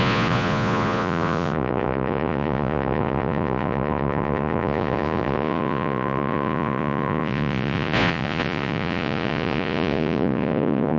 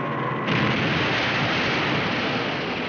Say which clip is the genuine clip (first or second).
second